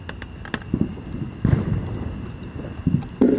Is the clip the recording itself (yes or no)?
yes